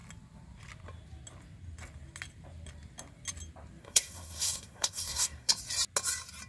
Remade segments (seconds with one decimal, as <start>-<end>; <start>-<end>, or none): 3.8-5.5